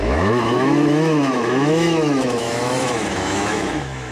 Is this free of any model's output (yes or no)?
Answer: no